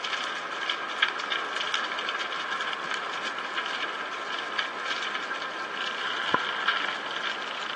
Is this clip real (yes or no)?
yes